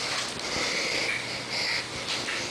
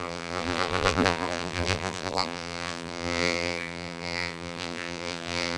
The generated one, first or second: second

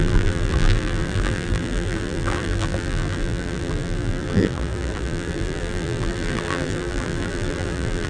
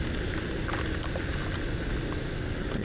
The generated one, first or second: first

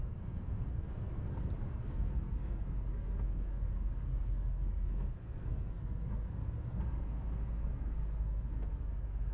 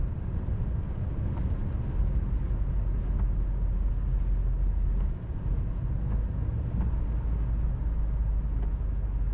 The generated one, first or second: first